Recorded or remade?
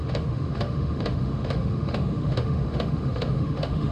remade